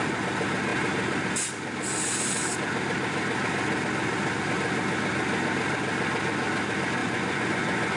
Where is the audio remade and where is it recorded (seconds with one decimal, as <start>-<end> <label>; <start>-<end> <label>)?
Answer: 0.0-7.0 recorded; 7.0-8.0 remade